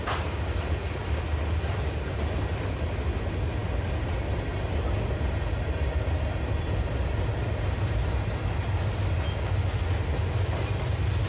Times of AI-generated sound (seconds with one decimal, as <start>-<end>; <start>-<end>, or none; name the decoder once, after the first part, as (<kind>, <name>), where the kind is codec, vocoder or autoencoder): none